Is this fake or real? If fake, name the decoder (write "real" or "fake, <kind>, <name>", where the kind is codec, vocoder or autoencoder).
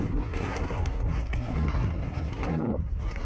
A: fake, codec, SNAC